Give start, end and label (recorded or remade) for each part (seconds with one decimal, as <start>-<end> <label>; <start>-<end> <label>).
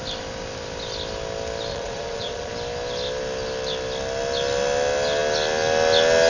0.0-1.7 recorded; 1.7-2.5 remade; 2.5-6.3 recorded